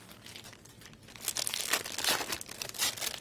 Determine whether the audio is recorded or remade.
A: recorded